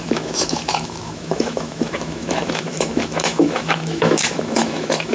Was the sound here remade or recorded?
remade